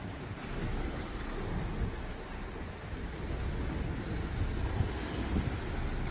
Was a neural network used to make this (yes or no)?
no